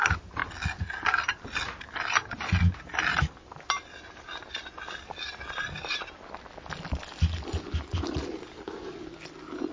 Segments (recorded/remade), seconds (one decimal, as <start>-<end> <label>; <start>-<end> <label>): 0.0-9.7 recorded